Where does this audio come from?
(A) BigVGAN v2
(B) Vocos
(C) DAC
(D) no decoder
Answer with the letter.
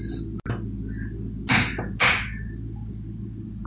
D